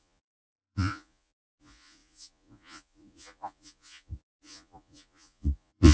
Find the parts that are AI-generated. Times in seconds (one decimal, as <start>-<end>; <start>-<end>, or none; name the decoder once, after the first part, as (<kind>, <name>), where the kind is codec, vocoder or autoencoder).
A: 0.0-5.9 (vocoder, Vocos)